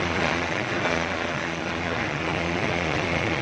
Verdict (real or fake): fake